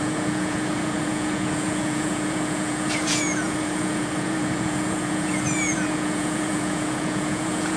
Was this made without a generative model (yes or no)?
no